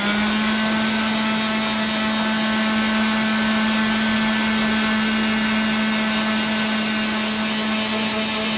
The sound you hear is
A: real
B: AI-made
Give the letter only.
A